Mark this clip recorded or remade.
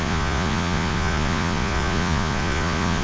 remade